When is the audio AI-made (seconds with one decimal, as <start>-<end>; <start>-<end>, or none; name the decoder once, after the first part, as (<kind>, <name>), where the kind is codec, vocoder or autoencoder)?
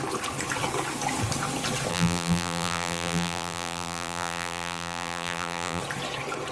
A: 1.9-5.8 (vocoder, BigVGAN v2)